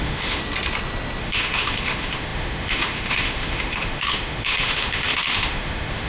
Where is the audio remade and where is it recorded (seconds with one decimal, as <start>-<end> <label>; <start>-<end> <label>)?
0.0-0.4 remade; 0.4-1.2 recorded; 1.2-6.1 remade